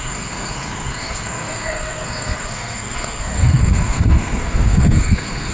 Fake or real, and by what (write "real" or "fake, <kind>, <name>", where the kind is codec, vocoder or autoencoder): fake, codec, SNAC